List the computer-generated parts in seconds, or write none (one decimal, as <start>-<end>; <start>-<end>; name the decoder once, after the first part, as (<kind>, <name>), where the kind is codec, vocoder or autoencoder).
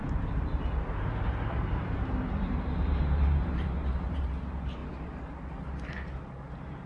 0.0-4.8 (vocoder, BigVGAN v2); 6.2-6.9